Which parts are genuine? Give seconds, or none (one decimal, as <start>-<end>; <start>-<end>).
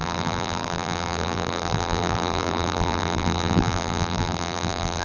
none